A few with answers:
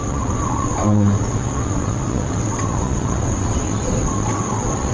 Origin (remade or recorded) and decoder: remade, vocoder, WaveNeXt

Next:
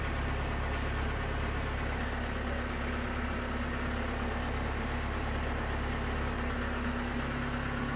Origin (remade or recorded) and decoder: recorded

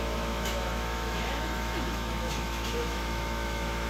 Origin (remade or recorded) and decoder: remade, autoencoder, DAC-VAE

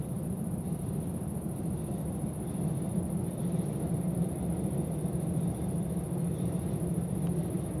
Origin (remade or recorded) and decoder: recorded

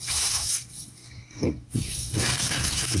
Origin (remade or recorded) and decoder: remade, codec, SNAC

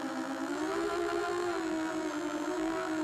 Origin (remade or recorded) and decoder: remade, vocoder, BigVGAN v2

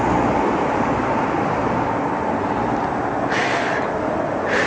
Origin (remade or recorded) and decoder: recorded